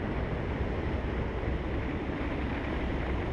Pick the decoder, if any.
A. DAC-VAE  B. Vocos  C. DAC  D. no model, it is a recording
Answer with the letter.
D